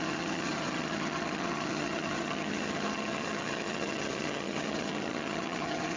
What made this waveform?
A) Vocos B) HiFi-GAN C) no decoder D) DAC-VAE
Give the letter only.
B